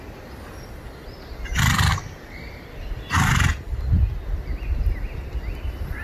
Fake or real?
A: real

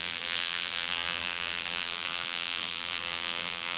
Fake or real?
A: fake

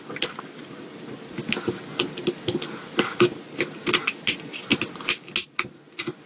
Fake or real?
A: real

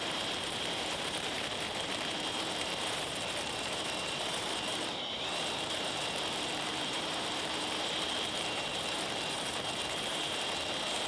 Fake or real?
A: fake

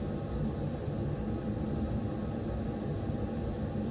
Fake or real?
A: real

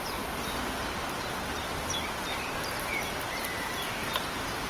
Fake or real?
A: fake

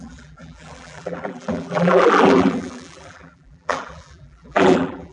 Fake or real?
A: fake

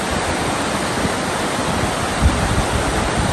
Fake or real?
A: real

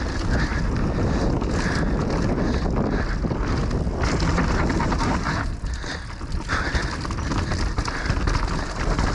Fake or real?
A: real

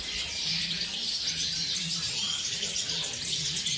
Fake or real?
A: real